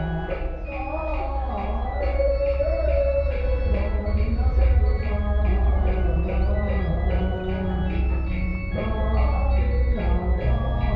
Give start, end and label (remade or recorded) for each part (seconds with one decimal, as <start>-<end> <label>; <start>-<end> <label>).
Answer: 0.0-2.1 recorded; 2.1-7.2 remade; 7.2-11.0 recorded